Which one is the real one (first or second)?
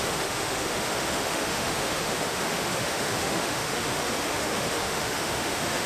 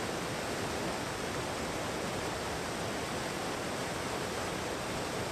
second